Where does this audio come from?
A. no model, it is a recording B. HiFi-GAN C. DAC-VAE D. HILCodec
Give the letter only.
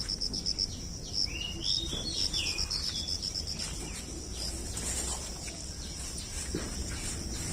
A